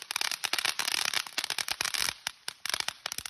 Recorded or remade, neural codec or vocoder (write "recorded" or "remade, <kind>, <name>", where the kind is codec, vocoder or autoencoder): recorded